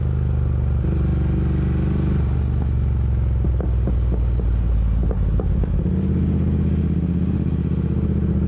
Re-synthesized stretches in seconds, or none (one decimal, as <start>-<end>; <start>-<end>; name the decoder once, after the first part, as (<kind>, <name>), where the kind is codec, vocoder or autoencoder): none